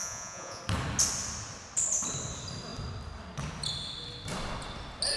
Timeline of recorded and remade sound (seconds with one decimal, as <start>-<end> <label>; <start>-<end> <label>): 0.0-0.6 remade; 0.6-5.2 recorded